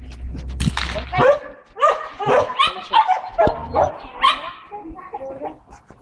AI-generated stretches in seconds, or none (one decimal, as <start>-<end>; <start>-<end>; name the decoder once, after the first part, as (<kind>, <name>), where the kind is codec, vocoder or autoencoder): 1.9-2.5 (vocoder, Vocos)